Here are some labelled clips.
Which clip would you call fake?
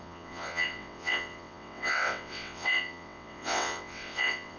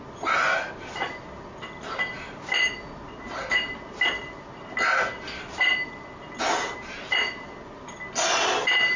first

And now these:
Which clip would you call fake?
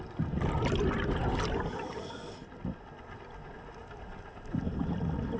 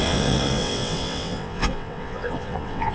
second